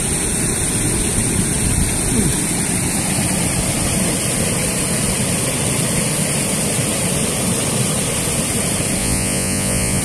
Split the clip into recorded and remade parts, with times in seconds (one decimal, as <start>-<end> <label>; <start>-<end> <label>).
0.0-9.0 recorded; 9.0-10.0 remade